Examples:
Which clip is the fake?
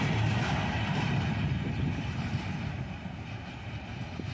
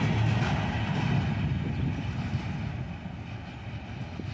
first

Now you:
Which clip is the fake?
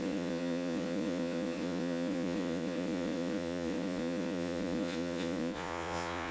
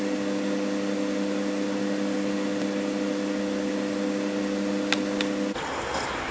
first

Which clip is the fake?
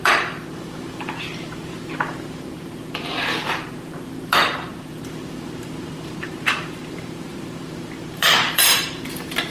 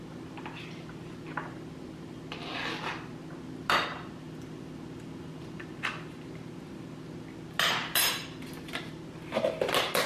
first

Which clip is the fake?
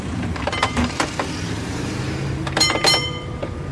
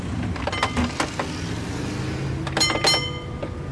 first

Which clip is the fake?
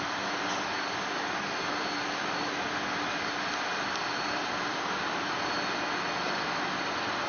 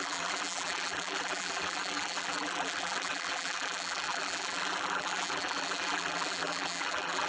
second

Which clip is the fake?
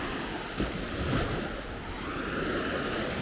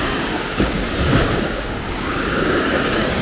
second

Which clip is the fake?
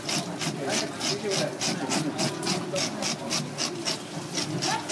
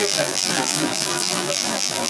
second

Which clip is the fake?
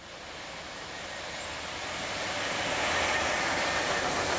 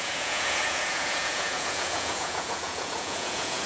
second